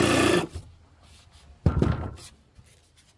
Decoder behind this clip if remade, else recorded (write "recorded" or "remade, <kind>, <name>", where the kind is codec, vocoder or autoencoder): recorded